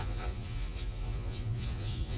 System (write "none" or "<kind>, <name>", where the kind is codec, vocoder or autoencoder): vocoder, Vocos